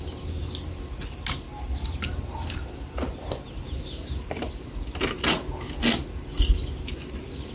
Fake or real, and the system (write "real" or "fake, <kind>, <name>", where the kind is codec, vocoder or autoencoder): real